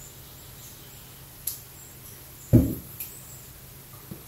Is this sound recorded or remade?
recorded